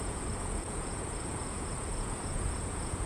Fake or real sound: fake